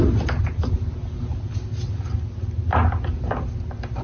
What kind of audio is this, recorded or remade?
recorded